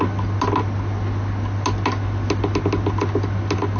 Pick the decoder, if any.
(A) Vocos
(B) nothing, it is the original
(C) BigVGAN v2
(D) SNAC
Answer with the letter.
B